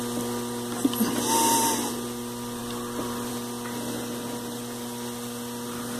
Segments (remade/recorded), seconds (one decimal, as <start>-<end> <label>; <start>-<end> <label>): 0.0-6.0 recorded